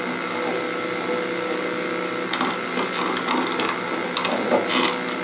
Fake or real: real